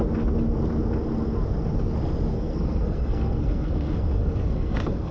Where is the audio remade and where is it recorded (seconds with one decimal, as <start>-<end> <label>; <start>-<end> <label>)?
0.0-2.3 recorded; 2.3-5.1 remade